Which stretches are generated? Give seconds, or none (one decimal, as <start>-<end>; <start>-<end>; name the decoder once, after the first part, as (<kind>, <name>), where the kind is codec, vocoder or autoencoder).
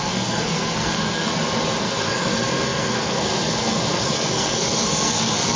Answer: 0.0-1.3 (codec, SNAC); 1.8-5.6